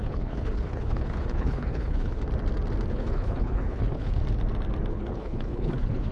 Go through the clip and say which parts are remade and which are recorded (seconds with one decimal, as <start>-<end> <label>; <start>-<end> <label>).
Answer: 0.0-2.2 remade; 2.2-2.9 recorded; 2.9-4.2 remade; 4.2-4.9 recorded; 4.9-6.1 remade